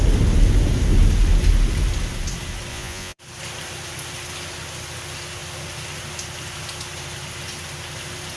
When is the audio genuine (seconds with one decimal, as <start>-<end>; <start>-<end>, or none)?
0.0-2.7; 3.2-8.4